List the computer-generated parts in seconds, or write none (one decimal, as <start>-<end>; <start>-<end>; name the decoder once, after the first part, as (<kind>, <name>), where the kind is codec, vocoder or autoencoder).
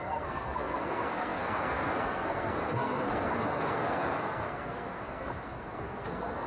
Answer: 0.0-6.5 (codec, SNAC)